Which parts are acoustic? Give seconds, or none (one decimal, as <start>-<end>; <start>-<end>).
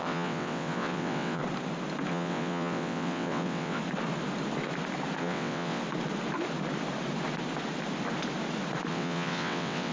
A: 1.4-2.1; 3.8-5.2; 5.8-8.9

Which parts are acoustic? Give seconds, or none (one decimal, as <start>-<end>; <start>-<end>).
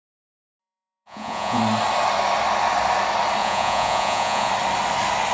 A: 0.0-0.6; 1.6-3.4; 4.5-5.3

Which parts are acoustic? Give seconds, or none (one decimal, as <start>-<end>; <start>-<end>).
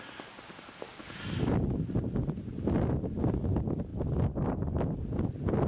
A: 0.0-5.7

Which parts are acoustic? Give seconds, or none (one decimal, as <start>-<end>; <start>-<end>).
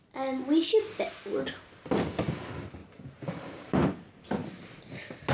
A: 0.0-2.8; 4.1-5.3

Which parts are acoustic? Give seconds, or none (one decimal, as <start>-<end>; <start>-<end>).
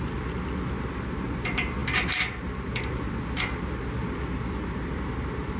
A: 0.0-5.6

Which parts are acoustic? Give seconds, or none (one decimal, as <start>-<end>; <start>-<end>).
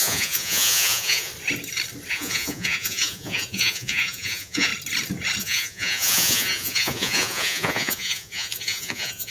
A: 1.3-2.1; 4.7-5.4